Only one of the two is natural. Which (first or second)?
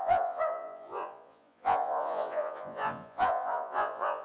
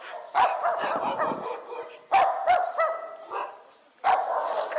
second